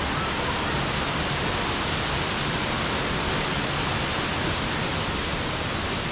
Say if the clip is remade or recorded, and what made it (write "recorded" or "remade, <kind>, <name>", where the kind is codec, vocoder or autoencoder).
recorded